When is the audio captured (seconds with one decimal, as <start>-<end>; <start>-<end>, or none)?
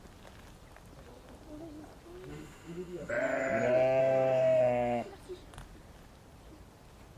0.0-2.3; 3.1-4.0; 5.1-7.2